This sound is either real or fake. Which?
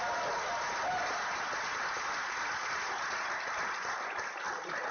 real